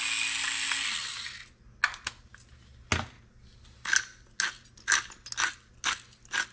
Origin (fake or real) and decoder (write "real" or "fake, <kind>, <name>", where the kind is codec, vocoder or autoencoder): real